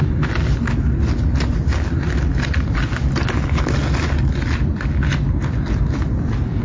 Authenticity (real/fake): real